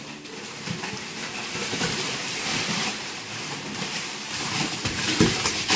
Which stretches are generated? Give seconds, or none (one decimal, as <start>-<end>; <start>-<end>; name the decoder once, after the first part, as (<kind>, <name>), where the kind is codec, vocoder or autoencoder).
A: 1.6-5.1 (vocoder, BigVGAN v2)